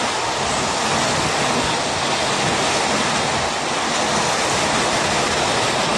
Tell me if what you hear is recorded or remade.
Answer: recorded